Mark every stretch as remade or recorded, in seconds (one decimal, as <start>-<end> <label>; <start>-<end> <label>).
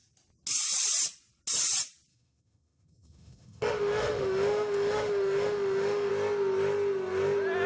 0.0-2.1 recorded; 2.1-6.1 remade; 6.1-7.7 recorded